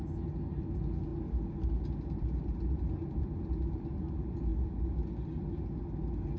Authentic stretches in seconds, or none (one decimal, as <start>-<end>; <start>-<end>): 0.0-6.4